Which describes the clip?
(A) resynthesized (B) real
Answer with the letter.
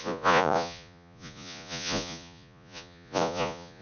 A